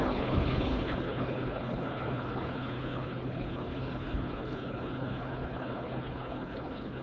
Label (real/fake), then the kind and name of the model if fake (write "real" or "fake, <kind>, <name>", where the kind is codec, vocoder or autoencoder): fake, codec, HILCodec